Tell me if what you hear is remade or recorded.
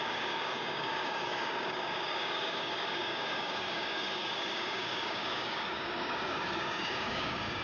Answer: remade